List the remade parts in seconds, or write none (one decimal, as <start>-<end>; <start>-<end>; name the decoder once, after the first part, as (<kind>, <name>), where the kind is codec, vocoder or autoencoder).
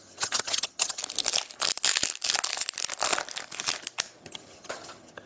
0.0-1.0 (vocoder, HiFi-GAN); 4.2-5.3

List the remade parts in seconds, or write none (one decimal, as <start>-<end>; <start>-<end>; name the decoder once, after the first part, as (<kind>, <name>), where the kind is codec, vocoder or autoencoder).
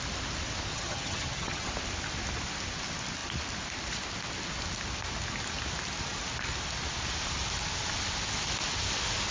0.7-1.7 (vocoder, HiFi-GAN)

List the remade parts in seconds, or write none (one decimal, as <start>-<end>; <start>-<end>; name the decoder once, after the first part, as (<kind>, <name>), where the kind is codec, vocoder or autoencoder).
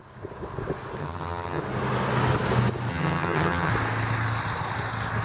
1.0-1.6 (vocoder, HiFi-GAN); 2.9-3.7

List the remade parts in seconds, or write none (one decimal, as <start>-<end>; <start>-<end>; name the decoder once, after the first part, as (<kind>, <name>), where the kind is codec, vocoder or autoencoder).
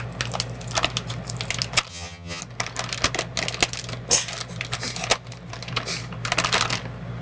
1.9-2.4 (vocoder, HiFi-GAN)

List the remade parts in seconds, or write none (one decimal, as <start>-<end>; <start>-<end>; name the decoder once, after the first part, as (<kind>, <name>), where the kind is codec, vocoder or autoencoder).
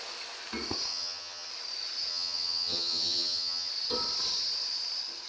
0.9-1.5 (vocoder, HiFi-GAN); 2.1-3.7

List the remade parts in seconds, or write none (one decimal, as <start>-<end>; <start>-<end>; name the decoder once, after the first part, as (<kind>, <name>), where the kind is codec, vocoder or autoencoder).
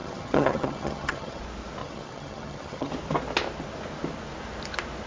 0.0-1.4 (vocoder, HiFi-GAN); 1.8-2.9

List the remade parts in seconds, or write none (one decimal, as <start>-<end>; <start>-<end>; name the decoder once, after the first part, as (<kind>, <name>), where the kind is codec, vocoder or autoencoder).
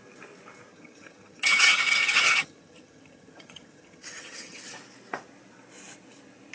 0.7-4.6 (vocoder, HiFi-GAN)